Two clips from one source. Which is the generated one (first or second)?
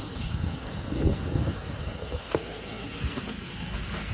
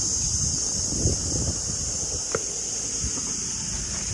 first